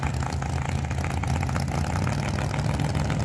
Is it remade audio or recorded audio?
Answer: recorded